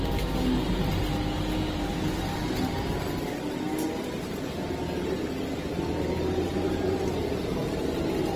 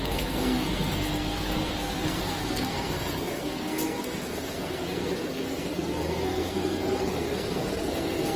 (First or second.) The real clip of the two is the first